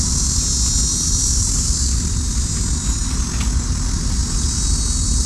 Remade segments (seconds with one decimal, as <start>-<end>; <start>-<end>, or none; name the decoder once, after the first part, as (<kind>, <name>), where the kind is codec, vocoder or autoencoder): 0.9-2.5 (vocoder, BigVGAN v2)